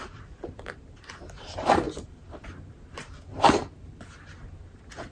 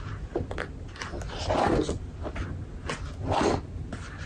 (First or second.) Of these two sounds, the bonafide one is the second